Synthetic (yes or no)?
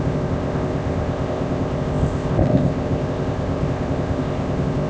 yes